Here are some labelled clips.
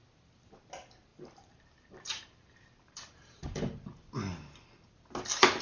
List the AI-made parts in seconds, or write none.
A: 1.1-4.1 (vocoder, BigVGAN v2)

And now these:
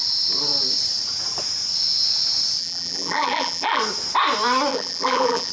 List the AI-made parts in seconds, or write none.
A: 2.6-3.8 (vocoder, BigVGAN v2); 4.7-5.5

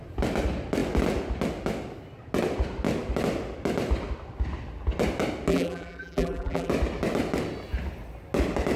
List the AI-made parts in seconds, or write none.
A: 5.5-6.7 (vocoder, BigVGAN v2)

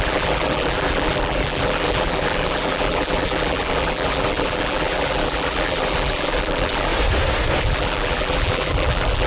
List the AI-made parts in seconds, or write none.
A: 0.0-6.9 (vocoder, BigVGAN v2); 7.6-9.3